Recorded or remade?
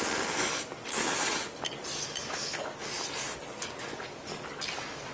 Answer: recorded